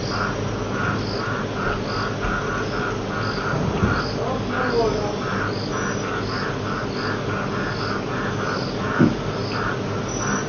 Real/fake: real